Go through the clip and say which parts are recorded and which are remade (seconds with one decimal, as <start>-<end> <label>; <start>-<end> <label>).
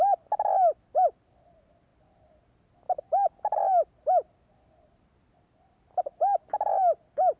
0.0-7.4 recorded